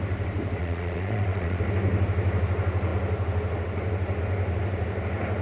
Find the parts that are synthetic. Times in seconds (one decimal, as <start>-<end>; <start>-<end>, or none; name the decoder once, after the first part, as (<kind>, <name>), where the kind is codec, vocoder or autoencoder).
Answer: 0.6-1.6 (vocoder, Vocos)

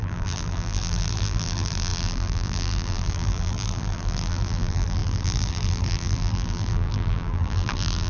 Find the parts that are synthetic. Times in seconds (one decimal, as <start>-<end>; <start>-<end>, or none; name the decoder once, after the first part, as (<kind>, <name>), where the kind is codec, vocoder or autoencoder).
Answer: 0.0-8.1 (vocoder, BigVGAN v2)

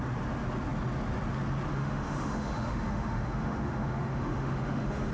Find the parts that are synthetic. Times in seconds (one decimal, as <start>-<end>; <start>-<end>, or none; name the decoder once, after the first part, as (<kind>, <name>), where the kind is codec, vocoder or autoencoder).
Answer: 1.7-5.1 (autoencoder, DAC-VAE)

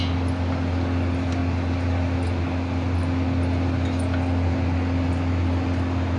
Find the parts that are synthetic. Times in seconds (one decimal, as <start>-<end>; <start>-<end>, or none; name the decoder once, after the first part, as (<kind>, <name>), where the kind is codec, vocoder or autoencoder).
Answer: none

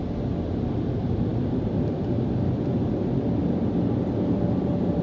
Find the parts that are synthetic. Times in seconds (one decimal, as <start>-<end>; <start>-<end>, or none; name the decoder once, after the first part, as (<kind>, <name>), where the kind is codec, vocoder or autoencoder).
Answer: none